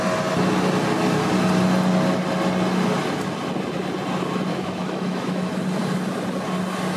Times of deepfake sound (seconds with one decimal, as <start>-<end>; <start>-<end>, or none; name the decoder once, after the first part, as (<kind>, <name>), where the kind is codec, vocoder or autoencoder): 4.5-5.5 (autoencoder, DAC-VAE)